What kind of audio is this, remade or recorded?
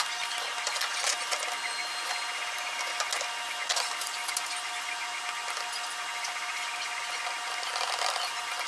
recorded